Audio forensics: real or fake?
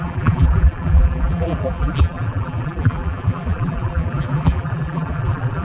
fake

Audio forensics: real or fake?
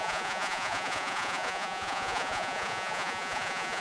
fake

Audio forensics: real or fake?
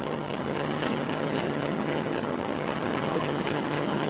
fake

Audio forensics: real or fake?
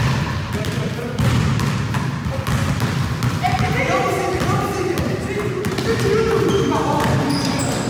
real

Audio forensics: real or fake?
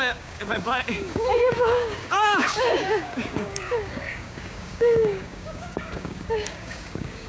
fake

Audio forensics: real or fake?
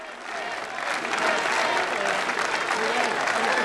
real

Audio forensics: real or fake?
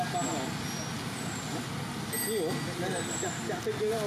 real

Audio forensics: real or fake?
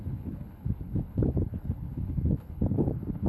fake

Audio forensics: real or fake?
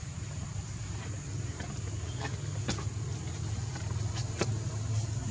real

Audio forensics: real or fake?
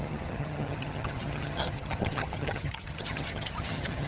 fake